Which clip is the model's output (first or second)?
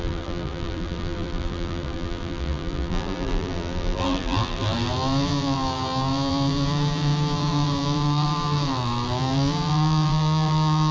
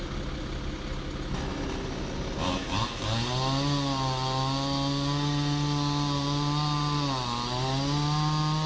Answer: first